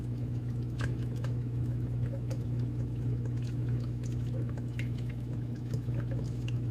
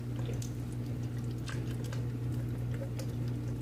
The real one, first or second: second